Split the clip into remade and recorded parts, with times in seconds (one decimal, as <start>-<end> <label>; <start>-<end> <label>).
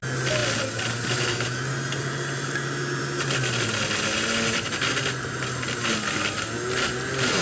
0.0-7.4 recorded